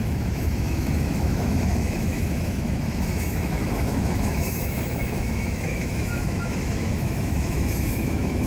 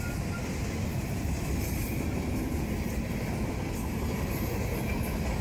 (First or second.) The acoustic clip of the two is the second